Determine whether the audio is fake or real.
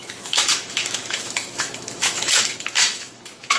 fake